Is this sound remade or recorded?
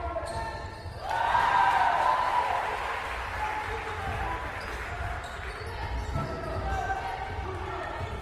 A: recorded